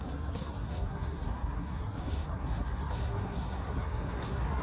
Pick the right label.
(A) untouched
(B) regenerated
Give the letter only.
B